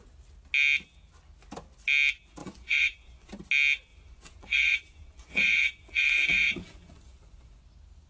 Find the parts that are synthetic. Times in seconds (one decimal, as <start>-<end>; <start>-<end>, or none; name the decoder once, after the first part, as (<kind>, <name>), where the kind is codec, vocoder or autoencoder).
2.4-3.3 (vocoder, Vocos); 3.9-7.6